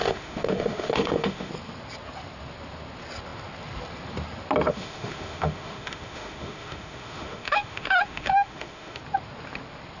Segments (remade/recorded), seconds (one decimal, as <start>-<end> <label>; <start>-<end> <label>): 0.0-1.5 remade; 1.5-4.7 recorded; 4.7-9.0 remade; 9.0-10.0 recorded

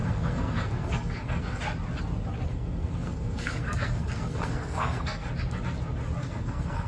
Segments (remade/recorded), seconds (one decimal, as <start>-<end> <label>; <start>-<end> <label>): 0.0-1.6 remade; 1.6-2.5 recorded; 2.5-5.3 remade; 5.3-6.2 recorded; 6.2-6.9 remade

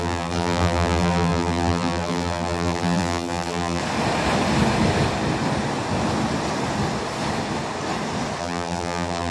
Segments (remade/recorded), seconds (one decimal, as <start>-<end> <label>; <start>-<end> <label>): 0.0-3.8 remade; 3.8-8.4 recorded; 8.4-9.3 remade

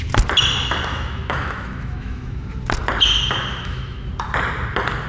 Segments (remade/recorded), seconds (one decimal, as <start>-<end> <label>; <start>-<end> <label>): 0.0-0.9 recorded; 0.9-2.5 remade; 2.5-3.5 recorded; 3.5-4.1 remade; 4.1-5.1 recorded

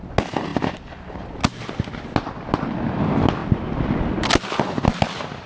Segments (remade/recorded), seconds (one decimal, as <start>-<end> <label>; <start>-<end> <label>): 0.0-5.5 recorded

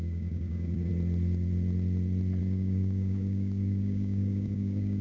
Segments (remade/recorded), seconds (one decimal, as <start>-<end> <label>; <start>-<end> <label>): 0.0-0.9 remade; 0.9-2.4 recorded; 2.4-5.0 remade